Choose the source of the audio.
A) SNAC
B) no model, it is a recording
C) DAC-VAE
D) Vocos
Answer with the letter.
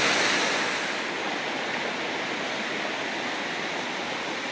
B